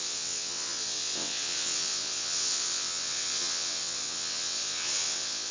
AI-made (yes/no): yes